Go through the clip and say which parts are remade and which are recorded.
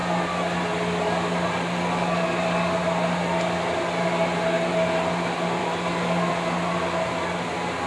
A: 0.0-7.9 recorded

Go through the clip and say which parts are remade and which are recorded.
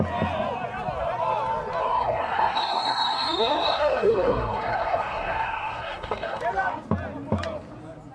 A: 0.0-1.8 recorded; 1.8-6.4 remade; 6.4-8.1 recorded